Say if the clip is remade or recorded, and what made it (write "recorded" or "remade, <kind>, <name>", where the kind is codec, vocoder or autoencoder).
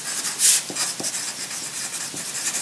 recorded